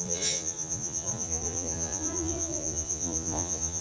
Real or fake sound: fake